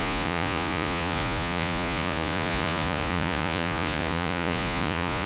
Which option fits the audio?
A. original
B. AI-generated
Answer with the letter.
B